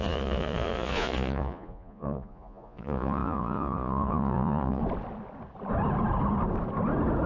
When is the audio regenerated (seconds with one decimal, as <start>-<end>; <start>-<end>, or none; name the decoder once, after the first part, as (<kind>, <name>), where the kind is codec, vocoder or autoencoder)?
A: 0.0-4.8 (vocoder, Vocos)

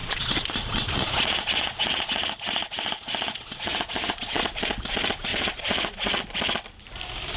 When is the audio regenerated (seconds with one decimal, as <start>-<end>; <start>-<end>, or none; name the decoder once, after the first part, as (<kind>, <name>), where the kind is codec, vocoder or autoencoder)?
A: 0.0-4.4 (vocoder, Vocos); 5.3-6.2

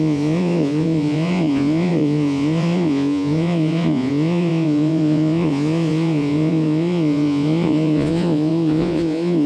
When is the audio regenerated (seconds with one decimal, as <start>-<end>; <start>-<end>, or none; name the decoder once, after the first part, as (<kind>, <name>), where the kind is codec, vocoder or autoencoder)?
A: 0.0-9.5 (vocoder, Vocos)

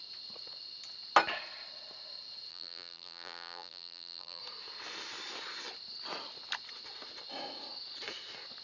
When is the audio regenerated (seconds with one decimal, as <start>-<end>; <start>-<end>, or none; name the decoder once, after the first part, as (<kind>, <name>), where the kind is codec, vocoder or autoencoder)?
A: 2.5-4.4 (vocoder, BigVGAN v2)

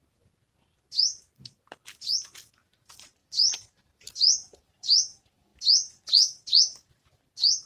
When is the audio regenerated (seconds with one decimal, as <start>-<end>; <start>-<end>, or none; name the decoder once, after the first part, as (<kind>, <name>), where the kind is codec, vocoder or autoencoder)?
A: 3.2-3.9 (vocoder, BigVGAN v2)